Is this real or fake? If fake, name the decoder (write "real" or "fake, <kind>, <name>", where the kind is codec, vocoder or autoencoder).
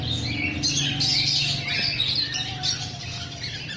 real